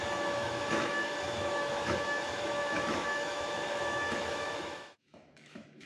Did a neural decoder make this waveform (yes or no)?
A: yes